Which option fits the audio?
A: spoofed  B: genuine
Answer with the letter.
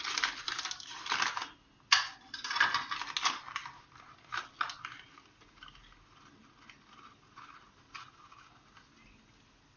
B